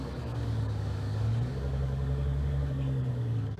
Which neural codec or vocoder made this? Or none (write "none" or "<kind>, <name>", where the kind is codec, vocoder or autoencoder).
codec, DAC